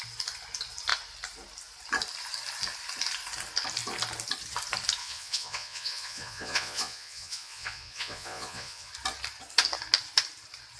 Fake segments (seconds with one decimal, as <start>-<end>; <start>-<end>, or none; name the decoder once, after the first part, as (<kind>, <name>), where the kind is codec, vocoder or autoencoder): 5.0-8.9 (vocoder, Vocos)